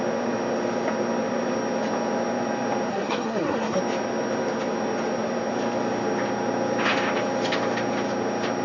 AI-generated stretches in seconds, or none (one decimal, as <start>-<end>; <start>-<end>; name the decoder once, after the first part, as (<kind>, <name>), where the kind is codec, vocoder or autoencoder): 2.9-3.8 (codec, SNAC)